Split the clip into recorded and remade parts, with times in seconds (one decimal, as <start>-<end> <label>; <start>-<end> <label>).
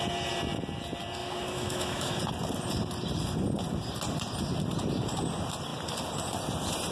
0.0-1.2 recorded; 1.2-2.2 remade; 2.2-6.9 recorded